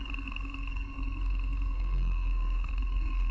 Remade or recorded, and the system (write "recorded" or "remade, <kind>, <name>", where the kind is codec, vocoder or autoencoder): remade, codec, SNAC